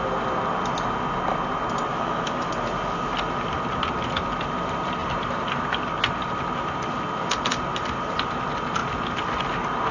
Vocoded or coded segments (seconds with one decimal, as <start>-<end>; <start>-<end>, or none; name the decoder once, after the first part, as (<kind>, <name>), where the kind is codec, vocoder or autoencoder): 1.9-2.5 (autoencoder, DAC-VAE)